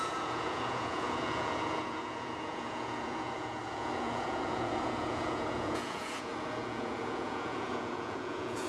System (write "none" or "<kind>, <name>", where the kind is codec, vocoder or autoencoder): vocoder, Vocos